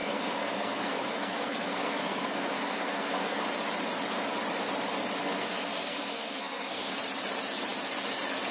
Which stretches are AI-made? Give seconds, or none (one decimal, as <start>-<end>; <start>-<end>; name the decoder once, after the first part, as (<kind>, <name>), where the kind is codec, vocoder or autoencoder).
0.0-3.4 (codec, SNAC); 5.2-7.0